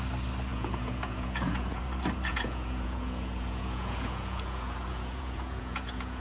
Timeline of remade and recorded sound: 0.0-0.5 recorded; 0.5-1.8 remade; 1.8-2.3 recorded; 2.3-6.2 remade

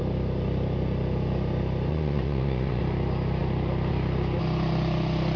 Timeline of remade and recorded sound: 0.0-1.9 recorded; 1.9-2.8 remade; 2.8-5.4 recorded